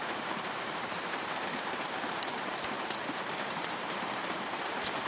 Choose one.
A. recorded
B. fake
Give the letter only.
B